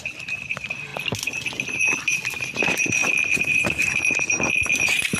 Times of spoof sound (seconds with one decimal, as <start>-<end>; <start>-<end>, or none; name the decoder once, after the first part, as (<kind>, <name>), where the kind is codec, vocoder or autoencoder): 3.0-3.8 (vocoder, BigVGAN v2)